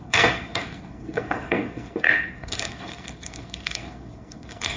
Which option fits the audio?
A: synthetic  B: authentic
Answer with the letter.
A